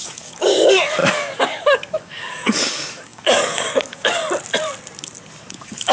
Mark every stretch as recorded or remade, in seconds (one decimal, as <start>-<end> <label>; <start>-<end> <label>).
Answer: 0.0-4.2 remade; 4.2-5.5 recorded; 5.5-5.9 remade